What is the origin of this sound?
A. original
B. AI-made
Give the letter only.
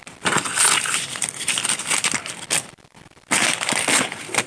A